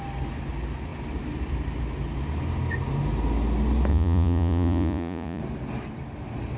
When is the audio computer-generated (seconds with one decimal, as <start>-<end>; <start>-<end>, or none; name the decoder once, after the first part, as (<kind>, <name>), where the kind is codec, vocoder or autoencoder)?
3.9-5.4 (vocoder, Vocos)